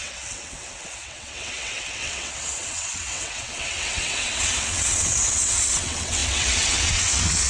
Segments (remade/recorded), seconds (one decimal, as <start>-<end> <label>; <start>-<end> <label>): 0.0-7.5 remade